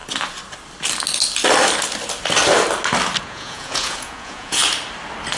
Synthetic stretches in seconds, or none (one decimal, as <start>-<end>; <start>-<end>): 3.2-4.6